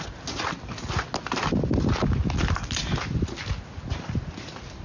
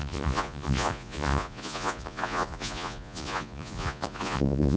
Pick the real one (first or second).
first